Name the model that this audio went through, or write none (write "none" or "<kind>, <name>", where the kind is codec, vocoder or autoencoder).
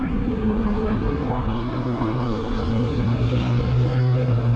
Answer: codec, SNAC